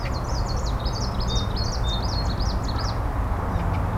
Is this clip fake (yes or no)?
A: no